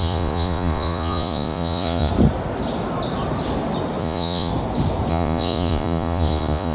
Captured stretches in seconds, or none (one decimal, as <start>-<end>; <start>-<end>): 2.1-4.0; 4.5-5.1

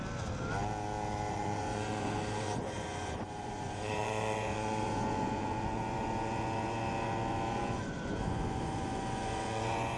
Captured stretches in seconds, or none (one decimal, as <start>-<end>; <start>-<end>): 0.0-1.3

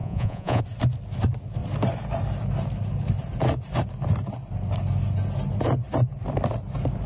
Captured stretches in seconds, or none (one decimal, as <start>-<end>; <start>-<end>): 0.6-7.1

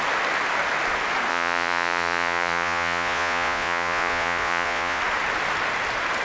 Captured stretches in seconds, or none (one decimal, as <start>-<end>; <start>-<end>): 0.0-1.3; 5.0-6.2

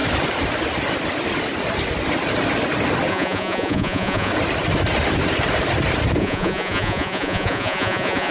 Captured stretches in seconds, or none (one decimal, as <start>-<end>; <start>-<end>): 0.0-3.1; 4.3-6.2